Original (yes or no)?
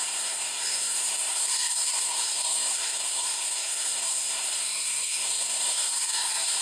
no